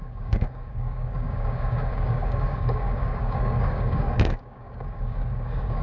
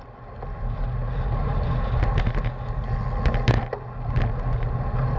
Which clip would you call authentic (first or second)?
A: second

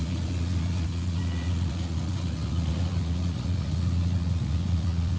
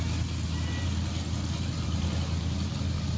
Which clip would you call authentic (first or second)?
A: second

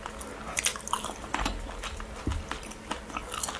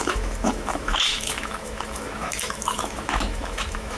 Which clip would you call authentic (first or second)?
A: first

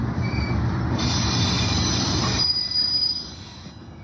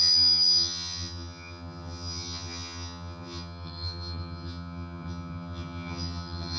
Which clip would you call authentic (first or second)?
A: first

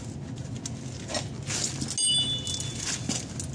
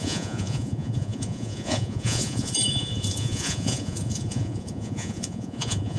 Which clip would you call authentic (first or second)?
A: first